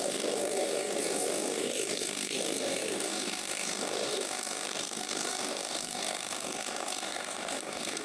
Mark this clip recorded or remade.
remade